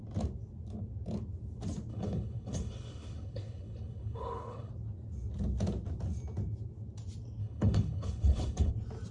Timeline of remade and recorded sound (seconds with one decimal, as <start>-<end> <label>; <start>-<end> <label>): 0.0-1.9 recorded; 1.9-4.7 remade; 4.7-7.4 recorded; 7.4-8.7 remade; 8.7-9.1 recorded